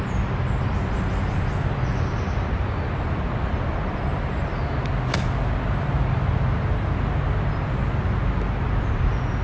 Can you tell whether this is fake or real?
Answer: real